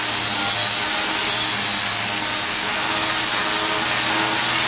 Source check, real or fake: real